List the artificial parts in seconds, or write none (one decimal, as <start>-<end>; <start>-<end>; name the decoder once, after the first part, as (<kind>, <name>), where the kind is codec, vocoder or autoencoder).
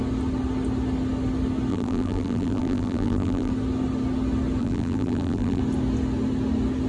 1.7-3.5 (vocoder, BigVGAN v2); 4.6-5.6